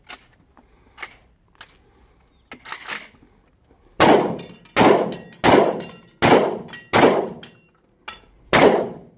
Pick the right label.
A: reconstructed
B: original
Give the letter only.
B